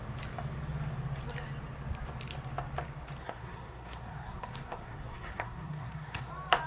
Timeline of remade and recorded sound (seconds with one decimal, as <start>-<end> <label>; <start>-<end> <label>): 0.0-3.2 recorded; 3.2-6.3 remade; 6.3-6.7 recorded